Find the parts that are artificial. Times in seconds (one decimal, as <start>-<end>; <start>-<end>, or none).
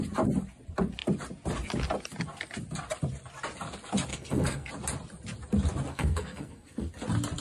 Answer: 4.1-4.7; 5.9-6.9